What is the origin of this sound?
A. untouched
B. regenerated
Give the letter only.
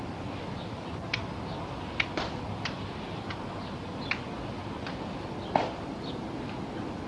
A